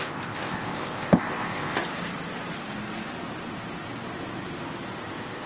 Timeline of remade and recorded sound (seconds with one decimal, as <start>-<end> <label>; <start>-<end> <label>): 0.0-1.8 remade; 1.8-5.1 recorded; 5.1-5.5 remade